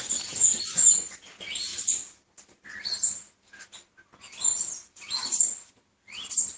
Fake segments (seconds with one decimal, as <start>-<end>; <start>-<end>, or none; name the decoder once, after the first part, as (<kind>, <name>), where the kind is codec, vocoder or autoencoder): none